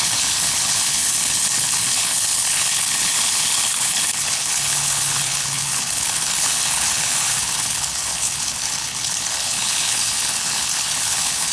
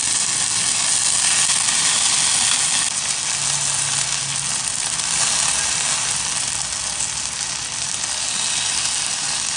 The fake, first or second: first